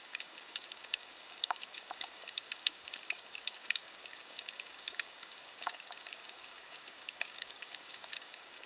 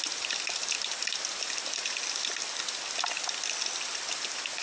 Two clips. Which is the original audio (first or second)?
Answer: second